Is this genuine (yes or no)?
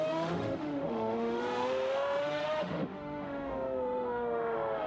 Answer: no